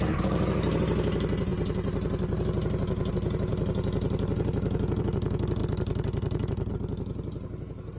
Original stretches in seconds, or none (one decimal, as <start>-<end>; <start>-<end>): 0.0-8.0